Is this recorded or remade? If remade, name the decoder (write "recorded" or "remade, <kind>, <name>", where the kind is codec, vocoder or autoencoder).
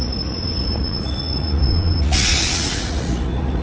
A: remade, vocoder, Vocos